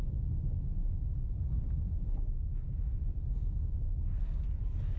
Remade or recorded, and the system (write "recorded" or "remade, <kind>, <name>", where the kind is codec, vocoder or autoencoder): recorded